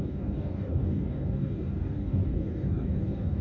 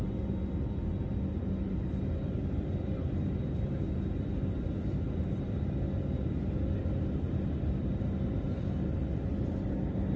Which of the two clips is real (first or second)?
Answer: second